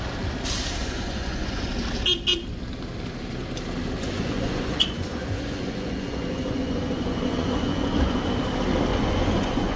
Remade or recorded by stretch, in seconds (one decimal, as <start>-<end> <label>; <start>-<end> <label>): 0.0-0.8 recorded; 0.8-1.7 remade; 1.7-4.0 recorded; 4.0-8.2 remade; 8.2-8.9 recorded; 8.9-9.8 remade